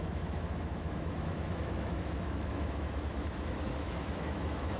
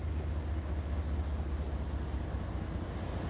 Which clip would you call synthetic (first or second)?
first